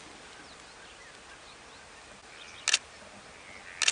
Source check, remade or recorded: recorded